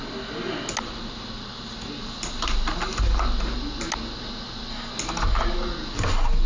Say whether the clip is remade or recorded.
recorded